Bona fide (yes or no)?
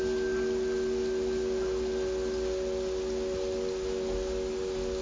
yes